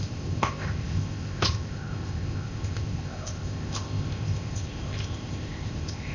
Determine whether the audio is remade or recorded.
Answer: remade